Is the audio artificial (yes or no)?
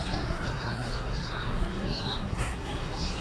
yes